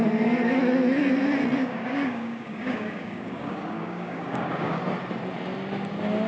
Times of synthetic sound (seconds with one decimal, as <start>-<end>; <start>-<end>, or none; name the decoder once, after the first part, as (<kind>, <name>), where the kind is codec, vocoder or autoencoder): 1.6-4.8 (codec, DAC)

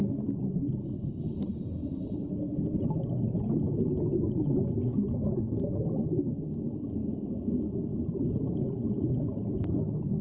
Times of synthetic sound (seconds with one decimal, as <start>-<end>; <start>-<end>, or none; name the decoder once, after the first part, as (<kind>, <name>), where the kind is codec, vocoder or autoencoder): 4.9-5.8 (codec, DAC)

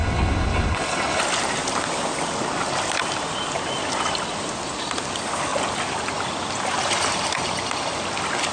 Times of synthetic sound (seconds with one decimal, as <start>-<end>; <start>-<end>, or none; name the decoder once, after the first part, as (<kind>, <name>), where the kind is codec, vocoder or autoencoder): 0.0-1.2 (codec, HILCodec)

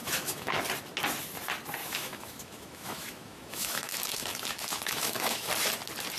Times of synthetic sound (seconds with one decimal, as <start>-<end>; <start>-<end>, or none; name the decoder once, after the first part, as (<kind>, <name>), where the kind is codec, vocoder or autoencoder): 0.0-0.6 (autoencoder, DAC-VAE); 1.8-5.5

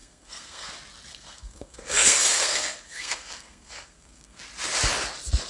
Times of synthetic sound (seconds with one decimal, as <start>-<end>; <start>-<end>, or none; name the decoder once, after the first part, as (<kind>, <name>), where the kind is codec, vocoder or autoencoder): 0.0-0.7 (codec, SNAC); 1.1-4.4